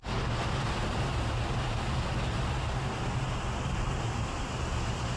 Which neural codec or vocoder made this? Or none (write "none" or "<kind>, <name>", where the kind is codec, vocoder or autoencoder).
none